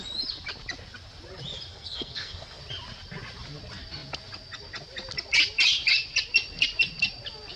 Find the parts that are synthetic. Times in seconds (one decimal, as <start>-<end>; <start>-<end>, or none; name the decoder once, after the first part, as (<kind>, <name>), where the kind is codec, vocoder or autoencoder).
1.7-2.6 (codec, SNAC)